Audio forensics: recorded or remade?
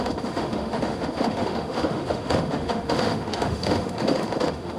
remade